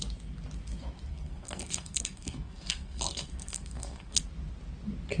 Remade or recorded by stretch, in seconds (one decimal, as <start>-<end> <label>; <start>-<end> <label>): 0.0-1.1 recorded; 1.1-4.2 remade; 4.2-5.2 recorded